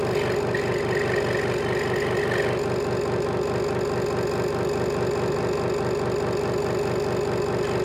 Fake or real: real